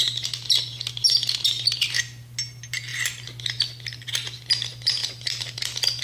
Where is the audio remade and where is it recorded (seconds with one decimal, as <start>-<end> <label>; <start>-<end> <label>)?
0.0-6.0 recorded